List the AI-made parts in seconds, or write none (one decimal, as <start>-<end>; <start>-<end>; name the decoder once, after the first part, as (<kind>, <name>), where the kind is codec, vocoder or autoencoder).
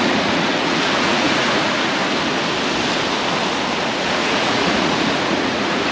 0.0-2.0 (vocoder, Vocos); 3.9-5.9